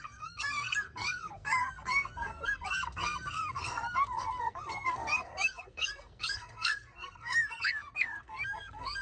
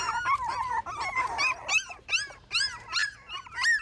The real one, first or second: second